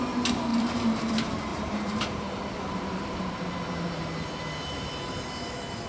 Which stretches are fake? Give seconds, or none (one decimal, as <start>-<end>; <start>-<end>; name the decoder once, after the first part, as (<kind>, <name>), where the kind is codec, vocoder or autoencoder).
0.5-1.1 (vocoder, BigVGAN v2); 1.5-3.5